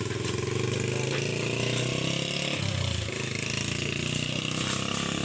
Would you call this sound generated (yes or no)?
no